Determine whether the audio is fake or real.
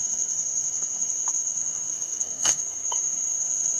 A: fake